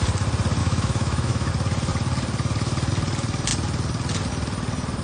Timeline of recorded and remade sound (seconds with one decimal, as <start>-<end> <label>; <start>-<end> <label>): 0.0-0.6 recorded; 0.6-1.5 remade; 1.5-5.0 recorded